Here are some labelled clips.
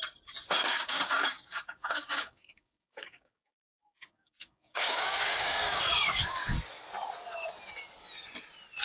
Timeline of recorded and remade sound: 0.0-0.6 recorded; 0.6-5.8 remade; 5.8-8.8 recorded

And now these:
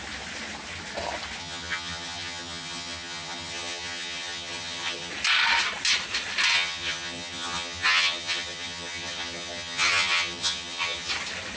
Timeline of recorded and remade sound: 0.0-1.4 recorded; 1.4-5.1 remade; 5.1-6.5 recorded; 6.5-11.1 remade; 11.1-11.6 recorded

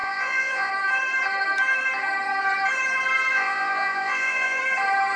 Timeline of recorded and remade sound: 0.0-0.7 remade; 0.7-3.3 recorded; 3.3-4.6 remade; 4.6-5.2 recorded

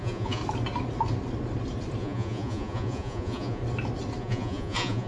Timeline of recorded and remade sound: 0.0-0.4 remade; 0.4-2.0 recorded; 2.0-3.6 remade; 3.6-4.2 recorded; 4.2-5.1 remade

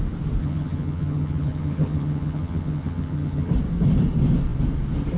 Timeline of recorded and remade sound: 0.0-0.4 recorded; 0.4-3.5 remade; 3.5-5.2 recorded